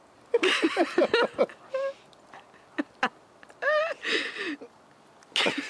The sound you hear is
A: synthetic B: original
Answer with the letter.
B